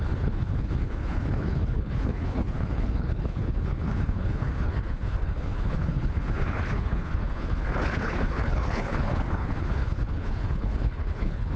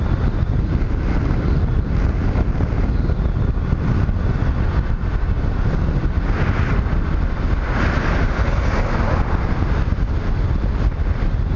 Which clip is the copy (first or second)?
first